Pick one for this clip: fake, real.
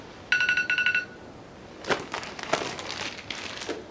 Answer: real